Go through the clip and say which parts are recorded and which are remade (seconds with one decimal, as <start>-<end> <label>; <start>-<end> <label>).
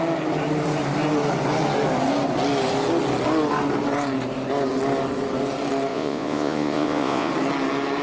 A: 0.0-5.9 recorded; 5.9-7.3 remade; 7.3-8.0 recorded